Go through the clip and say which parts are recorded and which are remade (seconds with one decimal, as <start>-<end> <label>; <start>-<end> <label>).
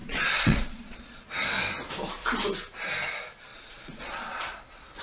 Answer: 0.0-1.2 remade; 1.2-3.5 recorded; 3.5-5.0 remade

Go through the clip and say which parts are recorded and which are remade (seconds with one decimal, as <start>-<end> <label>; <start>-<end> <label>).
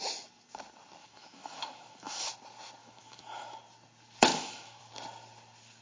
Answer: 0.0-1.0 recorded; 1.0-2.3 remade; 2.3-2.8 recorded; 2.8-3.6 remade; 3.6-4.3 recorded; 4.3-4.8 remade; 4.8-5.8 recorded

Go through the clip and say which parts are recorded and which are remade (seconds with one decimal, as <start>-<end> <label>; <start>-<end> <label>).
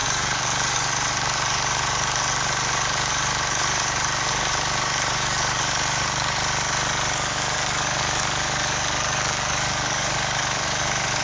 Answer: 0.0-6.4 remade; 6.4-7.1 recorded; 7.1-11.2 remade